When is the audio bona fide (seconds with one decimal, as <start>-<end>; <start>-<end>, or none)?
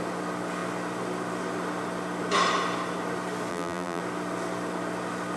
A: 0.0-3.5; 4.0-5.4